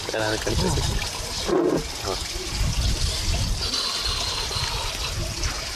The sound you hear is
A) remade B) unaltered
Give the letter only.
B